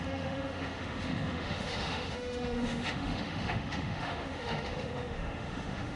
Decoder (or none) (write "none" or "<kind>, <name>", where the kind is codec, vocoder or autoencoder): autoencoder, DAC-VAE